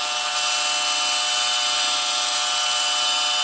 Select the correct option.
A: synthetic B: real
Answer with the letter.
B